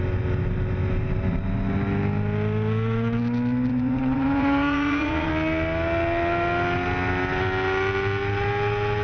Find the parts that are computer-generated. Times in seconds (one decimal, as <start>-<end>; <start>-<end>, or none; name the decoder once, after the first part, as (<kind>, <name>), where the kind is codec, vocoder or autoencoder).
3.7-5.3 (vocoder, Vocos)